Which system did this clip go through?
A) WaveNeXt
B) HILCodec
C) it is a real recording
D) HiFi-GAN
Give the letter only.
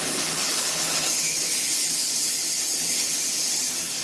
B